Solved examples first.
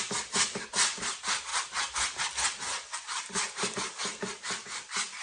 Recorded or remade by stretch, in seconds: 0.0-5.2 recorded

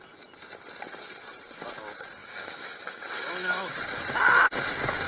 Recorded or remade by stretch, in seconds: 0.0-2.2 recorded; 2.2-3.7 remade; 3.7-5.1 recorded

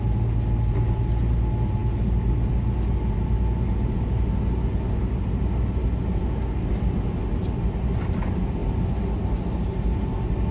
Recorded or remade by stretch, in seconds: 0.0-10.5 recorded

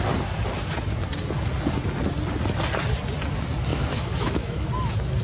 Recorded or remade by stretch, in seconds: 0.0-3.7 recorded; 3.7-4.7 remade; 4.7-5.2 recorded

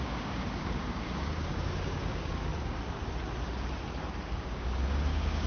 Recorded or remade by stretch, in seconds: 0.0-2.5 remade; 2.5-4.3 recorded; 4.3-5.5 remade

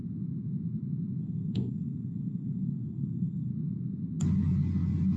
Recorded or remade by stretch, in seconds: 0.0-1.2 recorded; 1.2-3.5 remade; 3.5-5.2 recorded

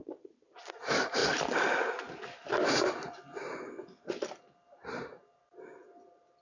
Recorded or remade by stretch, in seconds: 0.0-6.4 recorded

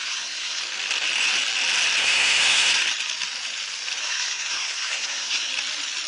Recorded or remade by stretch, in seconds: 0.0-0.6 remade; 0.6-2.0 recorded; 2.0-2.7 remade; 2.7-4.0 recorded; 4.0-5.5 remade; 5.5-6.1 recorded